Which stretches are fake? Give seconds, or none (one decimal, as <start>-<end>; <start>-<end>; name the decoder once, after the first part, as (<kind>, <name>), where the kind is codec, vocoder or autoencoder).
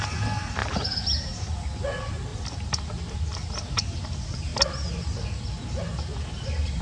0.6-1.5 (vocoder, BigVGAN v2)